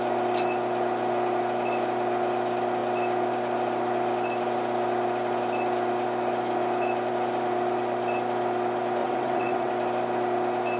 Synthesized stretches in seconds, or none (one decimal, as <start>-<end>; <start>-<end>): 9.0-9.7